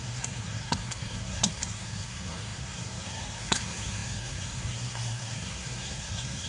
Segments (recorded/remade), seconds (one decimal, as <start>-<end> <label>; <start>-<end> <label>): 0.0-6.5 remade